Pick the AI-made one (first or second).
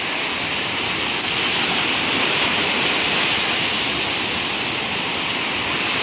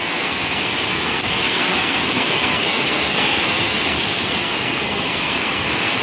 second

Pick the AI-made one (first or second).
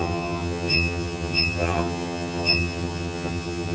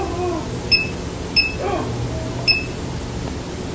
first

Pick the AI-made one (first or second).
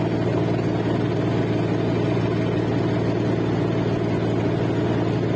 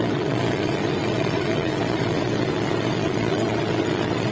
second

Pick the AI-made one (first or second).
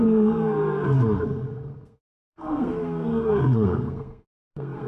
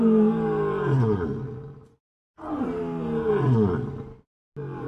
first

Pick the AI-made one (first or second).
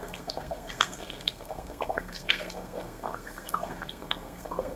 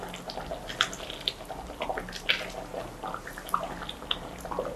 first